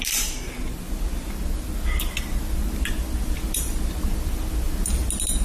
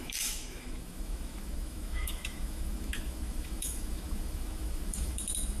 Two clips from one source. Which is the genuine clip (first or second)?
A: first